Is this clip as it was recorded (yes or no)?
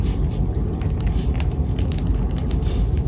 yes